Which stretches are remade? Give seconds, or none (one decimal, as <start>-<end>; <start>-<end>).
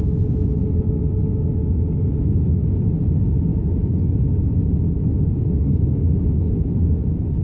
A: 3.5-5.2